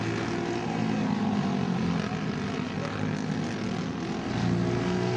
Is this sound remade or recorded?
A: recorded